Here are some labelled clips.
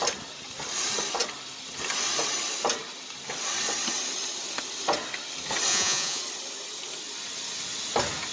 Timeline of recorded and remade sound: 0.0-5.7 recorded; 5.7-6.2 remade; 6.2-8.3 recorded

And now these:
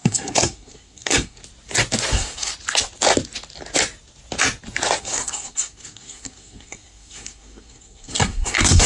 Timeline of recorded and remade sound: 0.0-1.4 remade; 1.4-2.1 recorded; 2.1-2.5 remade; 2.5-5.0 recorded; 5.0-8.9 remade